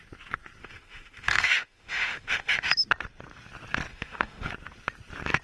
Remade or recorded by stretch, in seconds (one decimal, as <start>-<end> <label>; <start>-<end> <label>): 0.0-0.6 recorded; 0.6-2.7 remade; 2.7-3.9 recorded; 3.9-4.5 remade; 4.5-5.4 recorded